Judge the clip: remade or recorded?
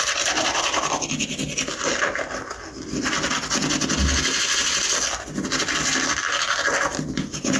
recorded